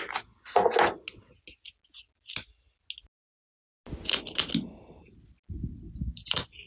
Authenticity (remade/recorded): recorded